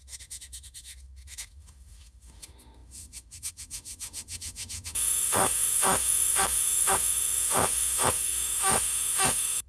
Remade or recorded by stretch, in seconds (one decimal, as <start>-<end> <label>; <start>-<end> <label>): 0.0-9.7 remade